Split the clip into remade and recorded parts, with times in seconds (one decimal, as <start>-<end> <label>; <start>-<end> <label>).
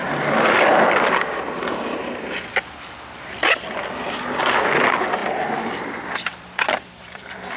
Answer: 0.0-5.2 recorded; 5.2-7.6 remade